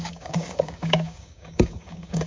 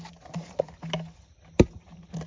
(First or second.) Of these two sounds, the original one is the second